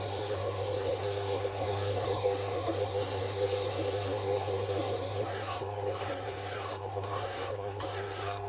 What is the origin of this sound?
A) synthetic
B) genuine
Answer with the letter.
A